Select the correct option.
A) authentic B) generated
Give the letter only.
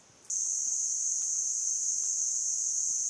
A